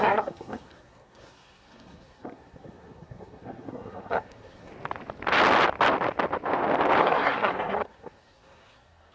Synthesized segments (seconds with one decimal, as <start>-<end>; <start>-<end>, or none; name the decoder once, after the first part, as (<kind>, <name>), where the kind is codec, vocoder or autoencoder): 0.0-4.7 (codec, SNAC); 7.0-9.1

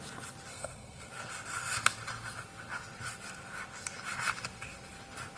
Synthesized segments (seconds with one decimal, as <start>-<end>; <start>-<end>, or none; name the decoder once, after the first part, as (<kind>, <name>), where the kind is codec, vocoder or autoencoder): 0.5-1.1 (codec, SNAC)

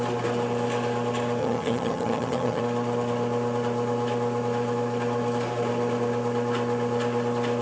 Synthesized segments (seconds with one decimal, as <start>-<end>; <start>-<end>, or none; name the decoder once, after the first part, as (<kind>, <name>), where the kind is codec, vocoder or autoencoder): 1.4-2.6 (vocoder, HiFi-GAN)

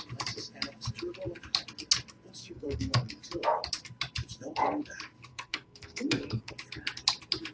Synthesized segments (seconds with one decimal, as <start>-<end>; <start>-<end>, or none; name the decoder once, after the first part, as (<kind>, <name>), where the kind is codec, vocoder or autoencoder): 2.4-3.1 (codec, SNAC); 5.3-6.5

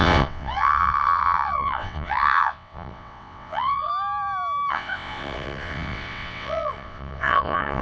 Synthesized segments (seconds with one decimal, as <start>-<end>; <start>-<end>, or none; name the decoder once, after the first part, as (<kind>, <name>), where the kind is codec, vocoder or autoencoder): 0.0-3.9 (vocoder, WaveNeXt); 4.7-7.8

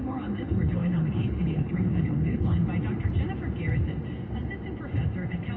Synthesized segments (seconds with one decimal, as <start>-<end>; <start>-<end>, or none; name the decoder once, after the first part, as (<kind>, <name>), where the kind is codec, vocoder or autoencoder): 0.0-2.6 (codec, HILCodec)

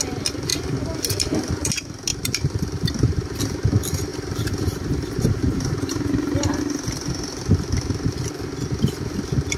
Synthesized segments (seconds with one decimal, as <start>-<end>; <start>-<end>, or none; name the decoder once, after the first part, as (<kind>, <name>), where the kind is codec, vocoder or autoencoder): 0.5-1.7 (vocoder, BigVGAN v2); 2.1-3.4; 4.1-6.6

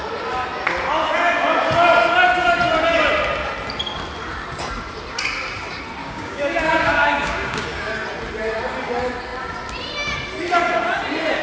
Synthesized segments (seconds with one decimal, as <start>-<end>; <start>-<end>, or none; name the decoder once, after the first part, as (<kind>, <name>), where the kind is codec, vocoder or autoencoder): 6.0-7.9 (codec, DAC)